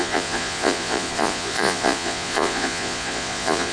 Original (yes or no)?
no